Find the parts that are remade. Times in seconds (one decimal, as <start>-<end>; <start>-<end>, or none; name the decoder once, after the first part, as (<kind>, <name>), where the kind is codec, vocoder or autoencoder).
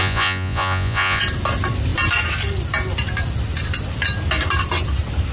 0.0-1.2 (vocoder, Vocos)